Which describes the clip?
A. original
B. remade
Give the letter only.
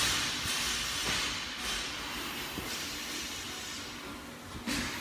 A